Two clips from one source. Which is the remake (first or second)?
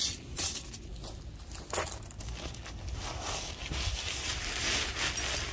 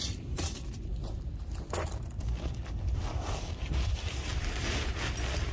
second